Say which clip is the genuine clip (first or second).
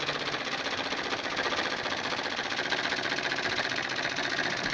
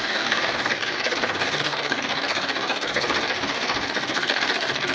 first